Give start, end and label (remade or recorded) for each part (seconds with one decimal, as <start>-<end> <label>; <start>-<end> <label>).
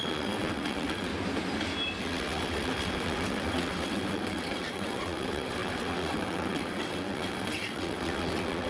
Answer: 0.0-1.1 remade; 1.1-2.0 recorded; 2.0-8.7 remade